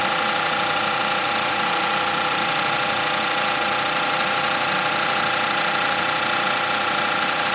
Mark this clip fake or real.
fake